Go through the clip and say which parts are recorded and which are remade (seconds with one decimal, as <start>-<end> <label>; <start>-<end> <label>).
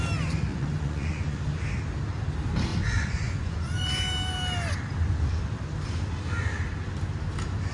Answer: 0.0-0.5 recorded; 0.5-1.4 remade; 1.4-2.7 recorded; 2.7-3.9 remade; 3.9-7.7 recorded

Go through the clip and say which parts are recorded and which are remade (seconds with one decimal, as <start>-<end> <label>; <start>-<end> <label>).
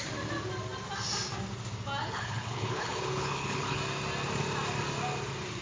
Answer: 0.0-2.0 recorded; 2.0-3.8 remade; 3.8-5.6 recorded